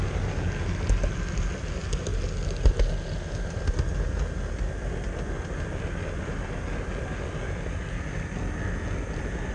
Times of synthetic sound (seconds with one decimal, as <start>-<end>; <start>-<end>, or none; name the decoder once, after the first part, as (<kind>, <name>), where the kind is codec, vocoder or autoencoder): none